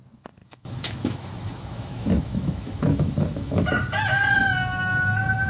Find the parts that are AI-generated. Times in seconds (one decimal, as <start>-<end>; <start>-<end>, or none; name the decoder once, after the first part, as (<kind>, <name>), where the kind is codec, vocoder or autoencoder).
0.4-3.7 (autoencoder, DAC-VAE)